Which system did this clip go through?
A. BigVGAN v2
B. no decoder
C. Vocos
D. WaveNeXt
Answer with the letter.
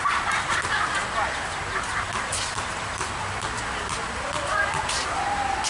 B